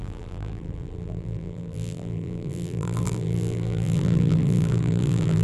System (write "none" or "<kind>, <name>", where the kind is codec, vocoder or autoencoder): vocoder, BigVGAN v2